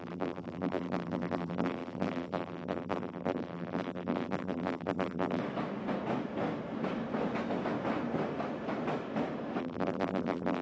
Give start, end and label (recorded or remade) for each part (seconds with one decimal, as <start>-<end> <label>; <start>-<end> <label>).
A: 0.0-5.4 remade; 5.4-9.6 recorded; 9.6-10.6 remade